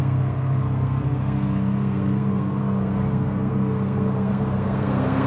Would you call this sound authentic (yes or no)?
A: no